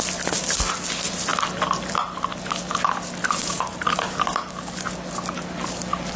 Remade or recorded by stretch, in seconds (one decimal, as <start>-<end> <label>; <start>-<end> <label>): 0.0-3.2 recorded; 3.2-4.5 remade; 4.5-6.2 recorded